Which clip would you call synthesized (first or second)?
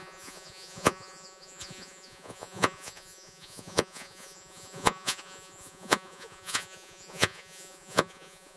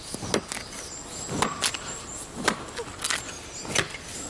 first